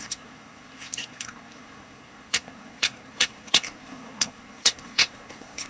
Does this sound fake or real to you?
fake